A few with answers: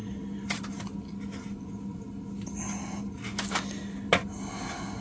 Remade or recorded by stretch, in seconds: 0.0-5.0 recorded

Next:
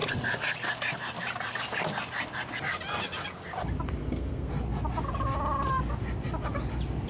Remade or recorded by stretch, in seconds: 0.0-4.0 recorded; 4.0-4.5 remade; 4.5-7.1 recorded

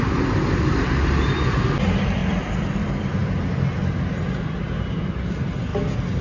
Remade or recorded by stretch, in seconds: 0.0-6.2 recorded

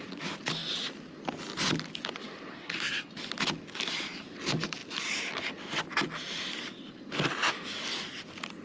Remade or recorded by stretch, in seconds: 0.0-2.5 recorded; 2.5-3.1 remade; 3.1-8.6 recorded